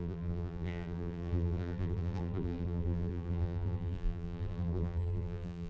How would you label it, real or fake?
fake